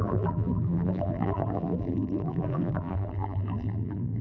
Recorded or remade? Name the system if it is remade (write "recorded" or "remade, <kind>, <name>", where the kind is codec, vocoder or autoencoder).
remade, vocoder, BigVGAN v2